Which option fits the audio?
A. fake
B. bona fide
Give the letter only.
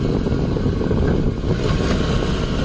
B